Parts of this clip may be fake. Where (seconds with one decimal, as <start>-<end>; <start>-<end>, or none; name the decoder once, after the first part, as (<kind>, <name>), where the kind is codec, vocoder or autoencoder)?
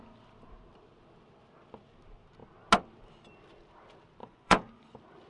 4.2-4.8 (vocoder, Vocos)